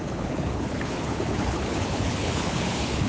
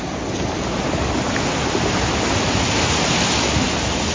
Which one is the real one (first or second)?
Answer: second